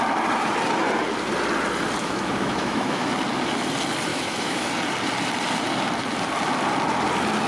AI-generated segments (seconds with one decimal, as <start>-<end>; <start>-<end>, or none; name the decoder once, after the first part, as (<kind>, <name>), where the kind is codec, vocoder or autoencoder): 2.0-3.1 (autoencoder, DAC-VAE); 4.1-4.7